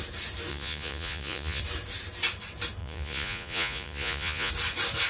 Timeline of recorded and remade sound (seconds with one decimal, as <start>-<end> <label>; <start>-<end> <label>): 0.0-0.5 recorded; 0.5-1.6 remade; 1.6-2.8 recorded; 2.8-4.5 remade; 4.5-5.1 recorded